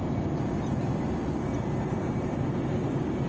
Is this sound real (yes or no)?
yes